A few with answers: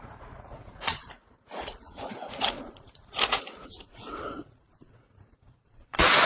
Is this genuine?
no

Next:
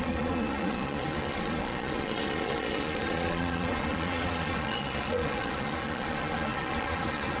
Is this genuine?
no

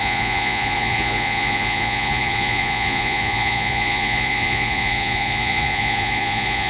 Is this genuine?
no